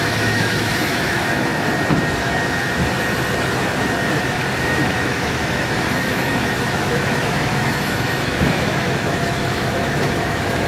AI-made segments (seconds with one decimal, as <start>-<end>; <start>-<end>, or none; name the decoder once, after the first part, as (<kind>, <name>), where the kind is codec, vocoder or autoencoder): 0.0-1.5 (autoencoder, DAC-VAE); 4.6-10.7